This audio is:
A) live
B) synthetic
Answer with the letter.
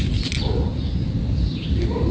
A